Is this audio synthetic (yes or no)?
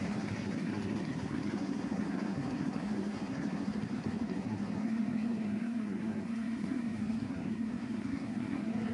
yes